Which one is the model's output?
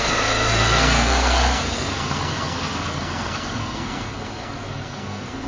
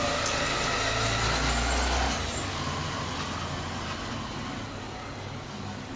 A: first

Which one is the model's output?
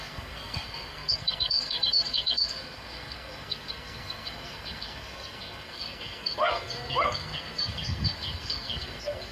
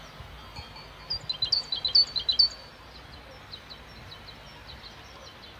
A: first